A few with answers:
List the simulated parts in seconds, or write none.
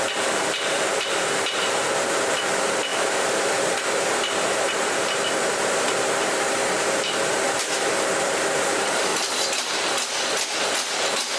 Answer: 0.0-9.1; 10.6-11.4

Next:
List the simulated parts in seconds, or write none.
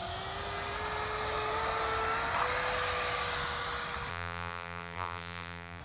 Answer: 4.1-5.8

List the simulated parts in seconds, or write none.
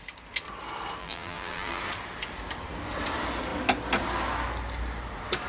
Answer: 1.0-1.8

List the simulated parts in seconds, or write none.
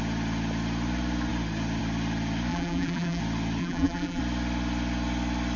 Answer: 2.5-3.2; 3.6-4.2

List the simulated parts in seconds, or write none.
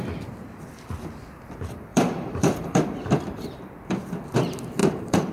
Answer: 1.9-3.6; 4.8-5.3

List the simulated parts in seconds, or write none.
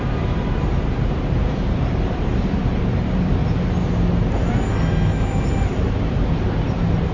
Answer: 0.0-3.4; 5.3-7.1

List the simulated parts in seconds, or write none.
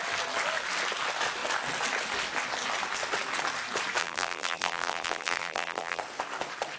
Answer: 4.0-6.0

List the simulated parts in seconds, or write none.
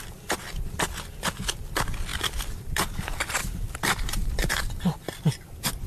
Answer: 2.1-4.6